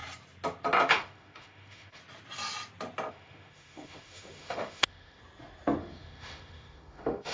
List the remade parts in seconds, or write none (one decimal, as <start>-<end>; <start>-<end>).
0.9-2.0; 3.1-5.2; 5.8-7.3